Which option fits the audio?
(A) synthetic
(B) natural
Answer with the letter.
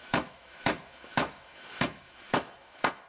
A